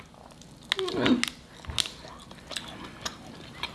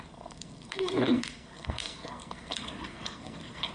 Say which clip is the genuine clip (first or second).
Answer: first